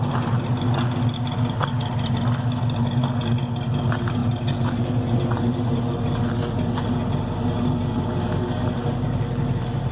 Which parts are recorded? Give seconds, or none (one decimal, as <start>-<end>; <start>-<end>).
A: 0.0-9.9